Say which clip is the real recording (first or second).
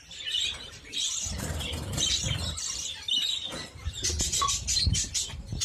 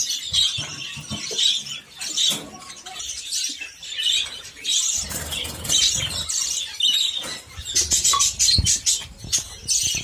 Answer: second